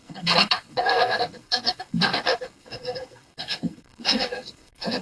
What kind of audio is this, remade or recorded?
remade